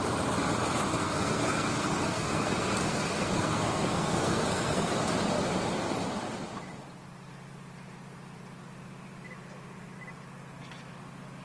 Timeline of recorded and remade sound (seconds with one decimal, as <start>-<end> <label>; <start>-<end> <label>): 0.0-0.9 recorded; 0.9-4.9 remade; 4.9-11.4 recorded

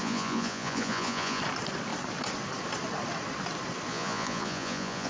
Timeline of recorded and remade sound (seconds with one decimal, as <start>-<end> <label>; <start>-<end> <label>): 0.0-1.4 remade; 1.4-3.9 recorded; 3.9-5.1 remade

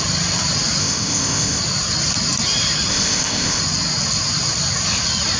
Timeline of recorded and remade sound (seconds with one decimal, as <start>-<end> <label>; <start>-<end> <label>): 0.0-0.8 recorded; 0.8-1.6 remade; 1.6-2.9 recorded; 2.9-3.6 remade; 3.6-5.4 recorded

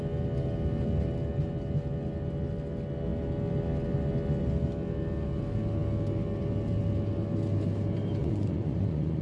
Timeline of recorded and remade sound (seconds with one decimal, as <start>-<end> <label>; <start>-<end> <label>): 0.0-8.2 recorded; 8.2-9.2 remade

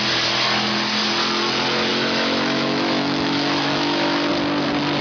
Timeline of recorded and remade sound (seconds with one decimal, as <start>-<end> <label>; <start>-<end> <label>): 0.0-1.9 recorded; 1.9-4.3 remade; 4.3-5.0 recorded